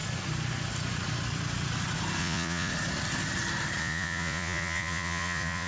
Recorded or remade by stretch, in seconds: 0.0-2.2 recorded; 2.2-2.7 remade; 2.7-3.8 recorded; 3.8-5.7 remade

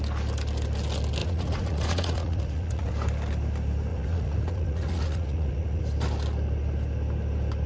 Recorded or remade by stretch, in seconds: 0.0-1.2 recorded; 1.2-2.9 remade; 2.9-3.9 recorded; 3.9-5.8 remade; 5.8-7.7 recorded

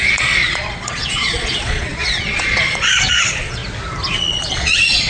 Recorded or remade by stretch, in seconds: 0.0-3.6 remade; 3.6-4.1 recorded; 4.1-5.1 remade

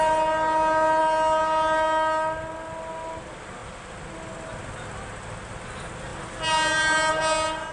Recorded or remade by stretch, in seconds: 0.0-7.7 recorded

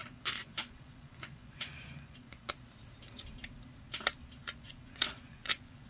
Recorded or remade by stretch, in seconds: 0.0-2.5 remade; 2.5-4.4 recorded; 4.4-5.9 remade